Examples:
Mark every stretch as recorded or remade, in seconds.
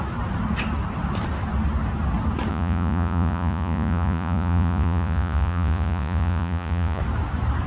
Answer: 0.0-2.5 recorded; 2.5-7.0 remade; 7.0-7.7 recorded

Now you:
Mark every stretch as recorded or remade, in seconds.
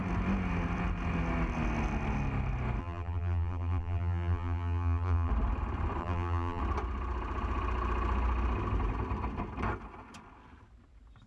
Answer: 0.0-2.8 recorded; 2.8-5.3 remade; 5.3-6.0 recorded; 6.0-6.6 remade; 6.6-11.3 recorded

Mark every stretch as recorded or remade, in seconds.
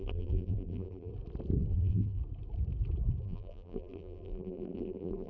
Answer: 0.0-1.1 remade; 1.1-1.7 recorded; 1.7-2.2 remade; 2.2-3.2 recorded; 3.2-5.3 remade